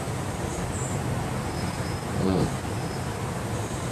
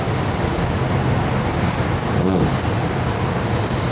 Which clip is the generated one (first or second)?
first